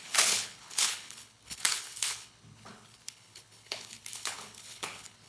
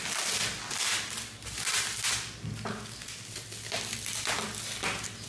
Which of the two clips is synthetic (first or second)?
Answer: first